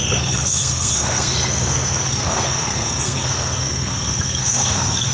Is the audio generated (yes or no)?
yes